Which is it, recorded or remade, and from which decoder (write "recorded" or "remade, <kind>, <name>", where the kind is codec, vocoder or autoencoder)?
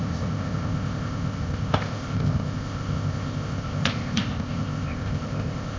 remade, codec, ZipCodec